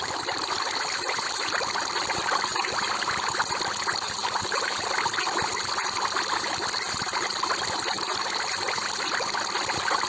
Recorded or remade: remade